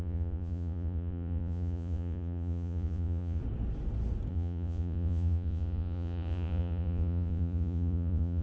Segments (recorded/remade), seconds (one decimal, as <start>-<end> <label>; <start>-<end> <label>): 0.0-3.4 remade; 3.4-4.3 recorded; 4.3-8.4 remade